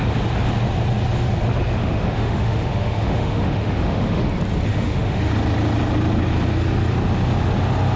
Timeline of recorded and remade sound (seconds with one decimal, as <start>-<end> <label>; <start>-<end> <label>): 0.0-1.8 recorded; 1.8-4.3 remade; 4.3-4.7 recorded; 4.7-5.3 remade; 5.3-8.0 recorded